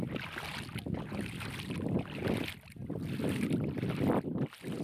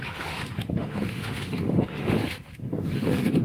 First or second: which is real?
first